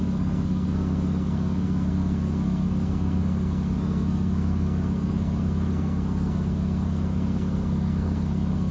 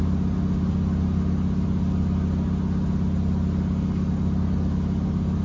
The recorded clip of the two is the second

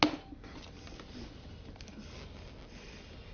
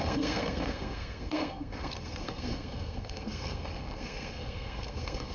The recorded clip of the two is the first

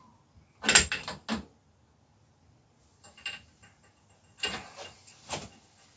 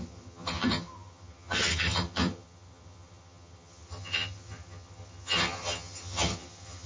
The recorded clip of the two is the first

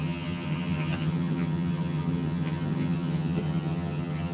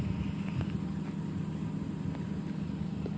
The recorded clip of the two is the second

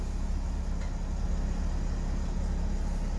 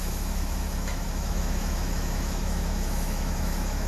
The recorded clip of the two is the first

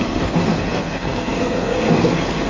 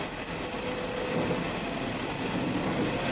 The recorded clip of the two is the second